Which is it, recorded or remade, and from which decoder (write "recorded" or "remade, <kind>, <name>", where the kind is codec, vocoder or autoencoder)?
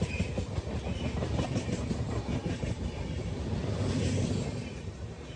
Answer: remade, vocoder, BigVGAN v2